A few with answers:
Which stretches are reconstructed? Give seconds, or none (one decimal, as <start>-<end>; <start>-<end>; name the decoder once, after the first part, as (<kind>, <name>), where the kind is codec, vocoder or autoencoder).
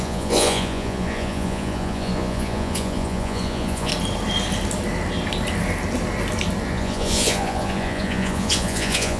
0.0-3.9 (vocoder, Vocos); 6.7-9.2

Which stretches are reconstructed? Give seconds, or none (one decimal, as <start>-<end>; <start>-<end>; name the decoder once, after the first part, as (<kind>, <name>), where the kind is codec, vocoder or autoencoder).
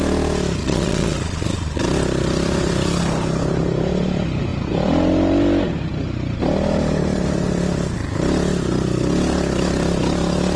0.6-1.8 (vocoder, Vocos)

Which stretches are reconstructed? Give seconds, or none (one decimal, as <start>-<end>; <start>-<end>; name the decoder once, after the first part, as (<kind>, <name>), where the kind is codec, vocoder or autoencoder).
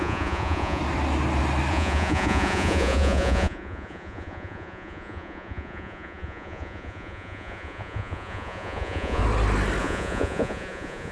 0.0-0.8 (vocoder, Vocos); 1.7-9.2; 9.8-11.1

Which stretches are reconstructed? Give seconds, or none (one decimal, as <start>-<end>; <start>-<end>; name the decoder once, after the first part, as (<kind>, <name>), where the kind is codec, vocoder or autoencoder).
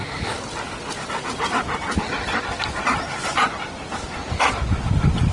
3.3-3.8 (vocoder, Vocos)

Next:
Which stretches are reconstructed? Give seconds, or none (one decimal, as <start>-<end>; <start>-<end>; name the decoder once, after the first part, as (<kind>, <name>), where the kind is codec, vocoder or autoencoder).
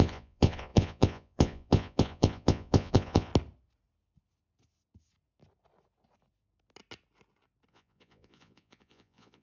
0.0-3.3 (vocoder, Vocos); 7.7-9.4